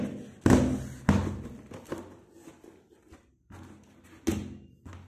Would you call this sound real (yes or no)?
yes